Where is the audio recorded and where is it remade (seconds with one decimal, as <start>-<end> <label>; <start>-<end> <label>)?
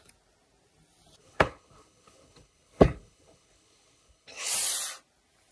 0.0-1.2 recorded; 1.2-4.5 remade; 4.5-5.5 recorded